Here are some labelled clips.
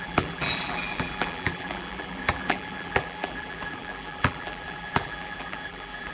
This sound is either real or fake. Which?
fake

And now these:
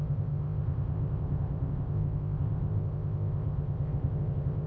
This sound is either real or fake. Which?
fake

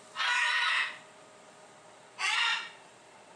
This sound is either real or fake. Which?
fake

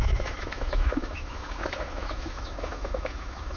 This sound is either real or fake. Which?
fake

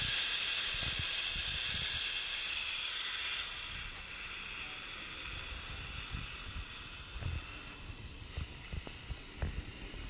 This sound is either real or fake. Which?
real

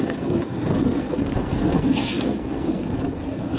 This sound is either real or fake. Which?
fake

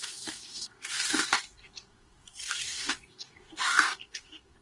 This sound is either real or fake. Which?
fake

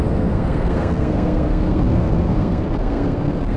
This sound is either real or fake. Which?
fake